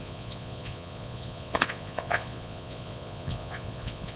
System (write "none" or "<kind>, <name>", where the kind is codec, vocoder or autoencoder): vocoder, Vocos